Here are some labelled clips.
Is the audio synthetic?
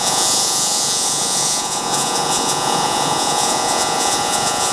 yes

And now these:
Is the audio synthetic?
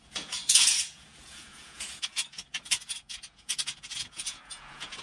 yes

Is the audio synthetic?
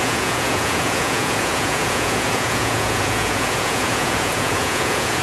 yes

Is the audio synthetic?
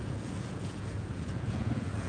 yes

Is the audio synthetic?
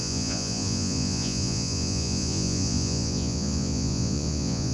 yes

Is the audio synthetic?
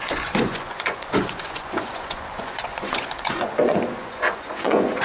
yes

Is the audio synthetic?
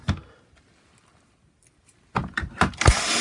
no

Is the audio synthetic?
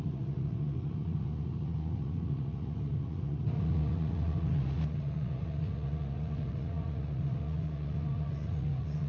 yes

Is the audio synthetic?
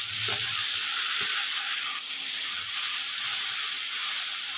no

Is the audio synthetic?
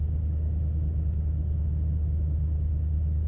no